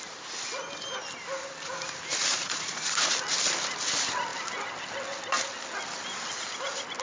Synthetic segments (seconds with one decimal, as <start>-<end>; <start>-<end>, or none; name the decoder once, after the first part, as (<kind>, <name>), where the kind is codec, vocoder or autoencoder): 2.3-3.1 (vocoder, Vocos)